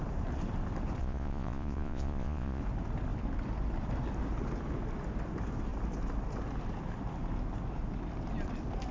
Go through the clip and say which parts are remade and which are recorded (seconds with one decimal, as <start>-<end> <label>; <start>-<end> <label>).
0.0-1.0 recorded; 1.0-2.6 remade; 2.6-8.9 recorded